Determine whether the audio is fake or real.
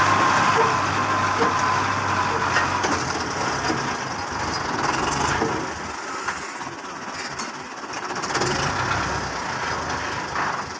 real